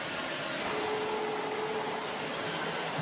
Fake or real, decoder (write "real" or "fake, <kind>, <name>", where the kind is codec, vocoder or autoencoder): real